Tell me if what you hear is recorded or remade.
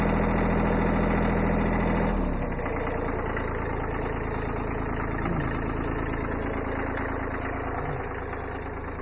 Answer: recorded